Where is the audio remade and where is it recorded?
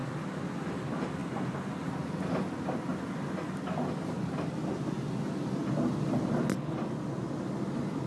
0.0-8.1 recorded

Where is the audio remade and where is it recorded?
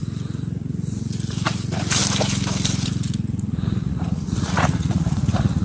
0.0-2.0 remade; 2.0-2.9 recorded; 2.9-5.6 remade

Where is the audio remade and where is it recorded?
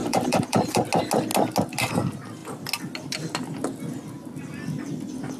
0.0-0.9 remade; 0.9-5.4 recorded